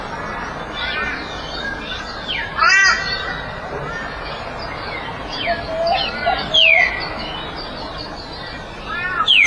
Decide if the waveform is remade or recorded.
recorded